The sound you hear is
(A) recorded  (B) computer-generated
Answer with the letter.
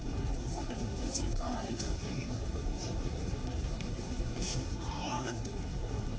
B